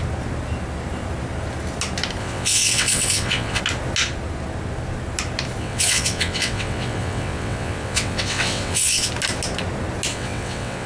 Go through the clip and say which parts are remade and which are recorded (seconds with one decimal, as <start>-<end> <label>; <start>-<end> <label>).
0.0-2.2 recorded; 2.2-3.6 remade; 3.6-5.6 recorded; 5.6-9.1 remade; 9.1-10.1 recorded; 10.1-10.9 remade

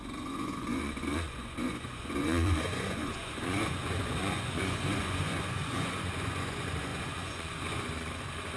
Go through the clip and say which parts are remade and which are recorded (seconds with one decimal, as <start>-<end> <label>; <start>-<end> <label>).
0.0-8.6 remade

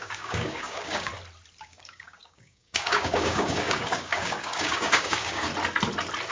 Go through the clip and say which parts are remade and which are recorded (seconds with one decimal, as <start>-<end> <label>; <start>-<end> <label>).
0.0-1.1 remade; 1.1-1.6 recorded; 1.6-5.5 remade; 5.5-6.3 recorded

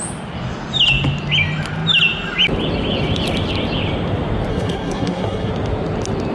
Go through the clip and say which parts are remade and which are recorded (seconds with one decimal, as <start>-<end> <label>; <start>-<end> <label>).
0.0-4.5 recorded; 4.5-5.5 remade; 5.5-6.3 recorded